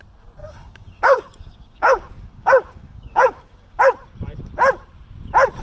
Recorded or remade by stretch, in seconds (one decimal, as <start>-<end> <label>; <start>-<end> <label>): 0.0-0.4 recorded; 0.4-3.8 remade; 3.8-5.6 recorded